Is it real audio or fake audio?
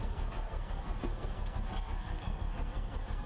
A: fake